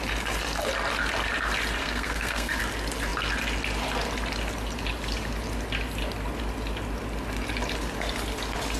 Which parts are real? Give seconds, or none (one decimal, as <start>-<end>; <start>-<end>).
0.0-1.8; 2.6-8.8